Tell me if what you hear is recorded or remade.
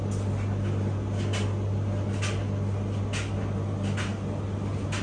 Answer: recorded